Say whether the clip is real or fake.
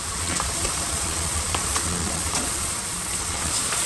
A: fake